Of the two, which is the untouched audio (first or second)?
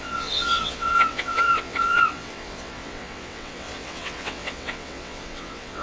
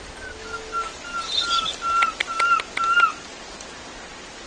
second